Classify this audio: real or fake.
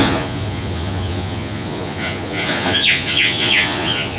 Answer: fake